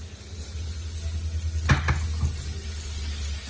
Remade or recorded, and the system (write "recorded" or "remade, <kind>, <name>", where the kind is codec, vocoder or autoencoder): recorded